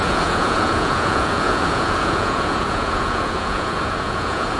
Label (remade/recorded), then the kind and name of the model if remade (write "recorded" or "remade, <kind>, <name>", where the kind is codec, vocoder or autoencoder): remade, vocoder, Vocos